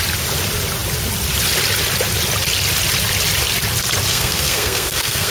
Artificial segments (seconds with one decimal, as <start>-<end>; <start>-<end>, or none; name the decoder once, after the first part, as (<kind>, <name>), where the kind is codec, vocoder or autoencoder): 4.1-5.3 (codec, SNAC)